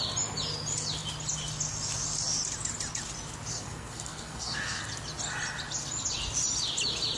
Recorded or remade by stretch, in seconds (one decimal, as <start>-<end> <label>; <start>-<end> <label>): 0.0-3.5 recorded; 3.5-4.8 remade; 4.8-7.2 recorded